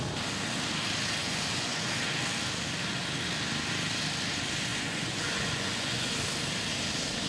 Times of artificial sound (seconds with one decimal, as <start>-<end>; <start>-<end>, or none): 1.2-1.9; 4.7-6.2

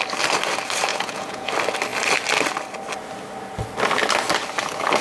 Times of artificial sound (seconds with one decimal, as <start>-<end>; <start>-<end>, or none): 0.9-1.5

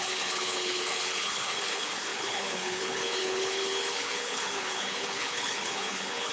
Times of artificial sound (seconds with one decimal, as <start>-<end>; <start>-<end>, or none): 0.0-6.3

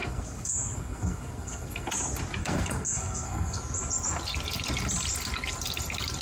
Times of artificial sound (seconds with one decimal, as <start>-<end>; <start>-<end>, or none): 0.0-1.9; 2.4-3.6